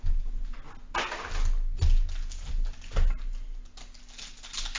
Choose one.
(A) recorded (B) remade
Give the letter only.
A